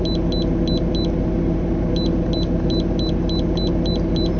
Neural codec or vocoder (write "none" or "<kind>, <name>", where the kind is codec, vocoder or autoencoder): none